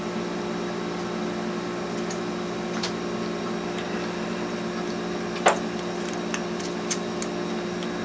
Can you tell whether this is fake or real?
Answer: real